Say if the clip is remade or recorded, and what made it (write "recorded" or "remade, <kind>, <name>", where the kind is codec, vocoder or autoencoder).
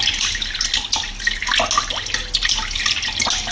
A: recorded